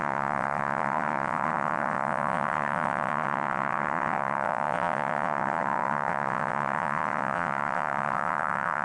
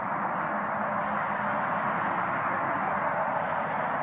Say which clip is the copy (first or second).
first